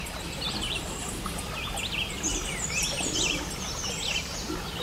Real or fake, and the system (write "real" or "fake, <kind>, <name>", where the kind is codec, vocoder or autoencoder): real